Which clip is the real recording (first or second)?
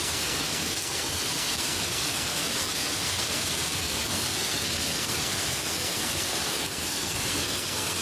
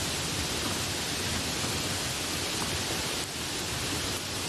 second